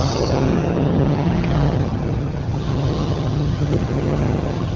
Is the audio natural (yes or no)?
no